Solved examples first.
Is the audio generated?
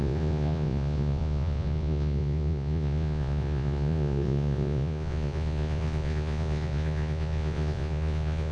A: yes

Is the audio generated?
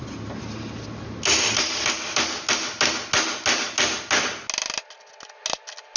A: no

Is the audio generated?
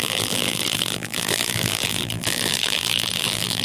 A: yes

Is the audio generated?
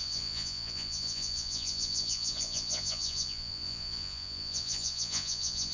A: yes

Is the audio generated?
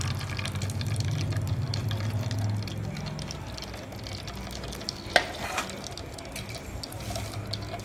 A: no